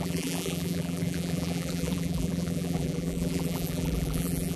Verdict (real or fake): fake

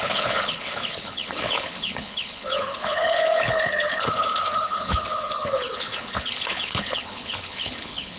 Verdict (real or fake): fake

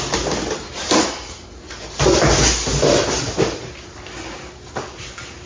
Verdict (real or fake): real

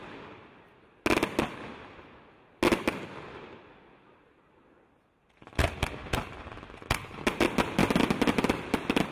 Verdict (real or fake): real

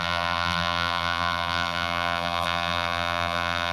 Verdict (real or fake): fake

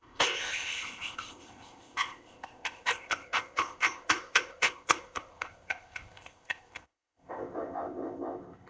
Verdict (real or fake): fake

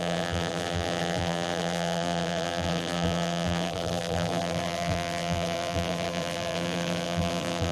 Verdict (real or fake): fake